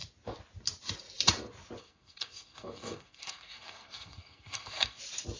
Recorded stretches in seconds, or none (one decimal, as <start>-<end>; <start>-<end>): 0.0-1.8; 5.0-5.4